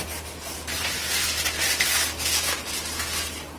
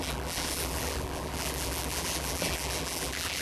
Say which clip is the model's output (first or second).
second